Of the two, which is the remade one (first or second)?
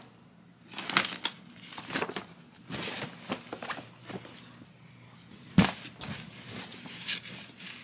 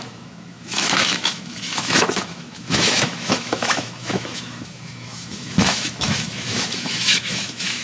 second